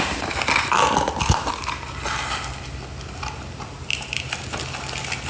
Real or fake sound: real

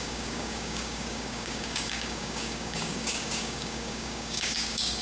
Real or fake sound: fake